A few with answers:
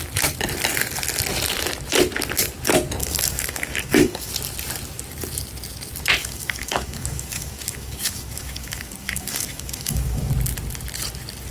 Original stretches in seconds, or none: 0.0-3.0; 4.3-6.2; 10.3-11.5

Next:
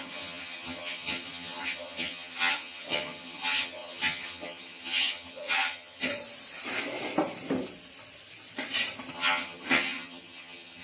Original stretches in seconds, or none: 6.1-9.1

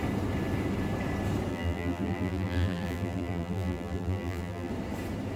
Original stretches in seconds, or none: 0.0-1.5; 4.7-5.4

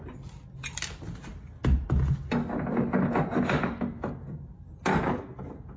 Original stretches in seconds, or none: 0.0-5.8

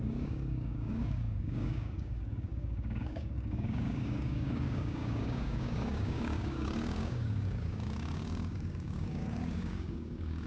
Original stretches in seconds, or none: none

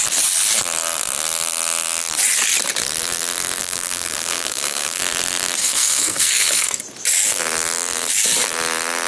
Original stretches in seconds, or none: 0.0-3.6; 5.0-5.6; 6.8-9.1

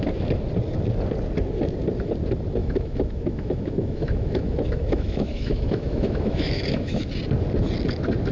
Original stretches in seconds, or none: 0.0-2.6; 7.1-8.3

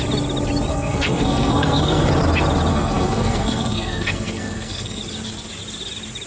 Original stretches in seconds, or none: 0.0-0.7; 2.1-2.7; 5.0-6.3